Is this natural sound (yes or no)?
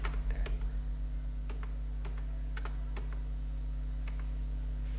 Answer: yes